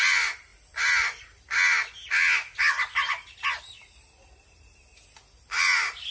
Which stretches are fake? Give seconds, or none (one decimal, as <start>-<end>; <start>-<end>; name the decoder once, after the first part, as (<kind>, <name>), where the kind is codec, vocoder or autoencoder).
none